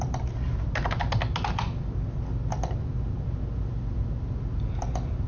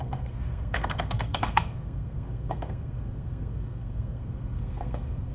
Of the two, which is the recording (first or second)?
first